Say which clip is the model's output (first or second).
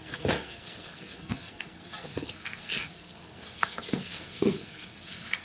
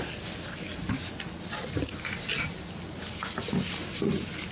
first